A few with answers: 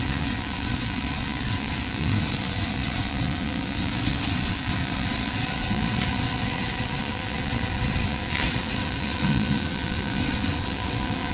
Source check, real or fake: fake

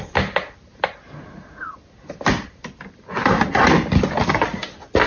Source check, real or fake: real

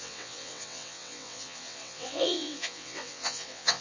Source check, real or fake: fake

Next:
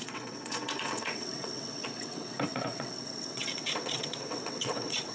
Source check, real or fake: fake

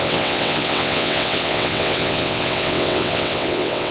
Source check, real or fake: fake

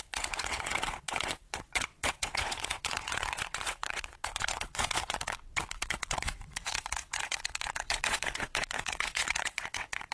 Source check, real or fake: fake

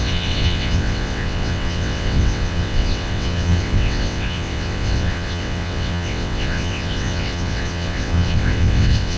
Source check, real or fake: fake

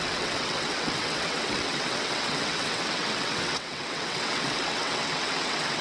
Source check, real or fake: fake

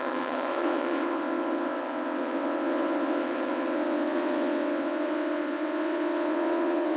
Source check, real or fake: fake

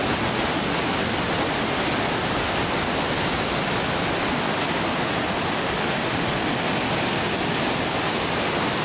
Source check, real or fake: real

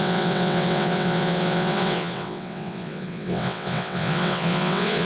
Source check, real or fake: fake